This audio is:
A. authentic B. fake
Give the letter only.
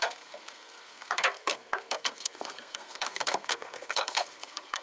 B